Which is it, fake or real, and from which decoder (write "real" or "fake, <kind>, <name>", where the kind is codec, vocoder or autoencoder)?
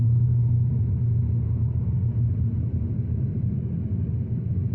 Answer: real